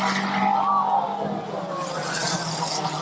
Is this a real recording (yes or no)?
yes